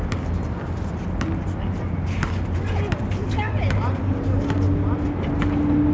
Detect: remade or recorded recorded